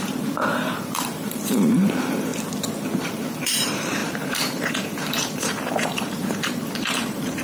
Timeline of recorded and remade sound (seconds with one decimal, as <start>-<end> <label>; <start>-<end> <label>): 0.0-2.3 remade; 2.3-3.1 recorded; 3.1-7.4 remade